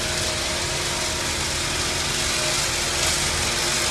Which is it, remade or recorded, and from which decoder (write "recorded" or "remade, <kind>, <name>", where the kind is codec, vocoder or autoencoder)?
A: recorded